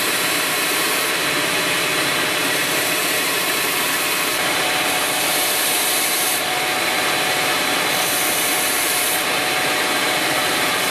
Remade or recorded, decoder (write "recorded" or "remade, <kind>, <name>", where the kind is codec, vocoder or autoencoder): remade, vocoder, BigVGAN v2